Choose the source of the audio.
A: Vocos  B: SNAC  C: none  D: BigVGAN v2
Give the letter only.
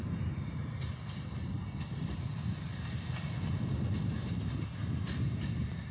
C